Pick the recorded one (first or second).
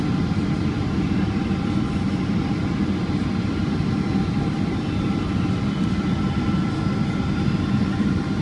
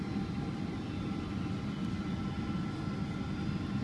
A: second